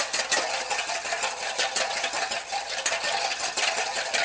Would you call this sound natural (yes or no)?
yes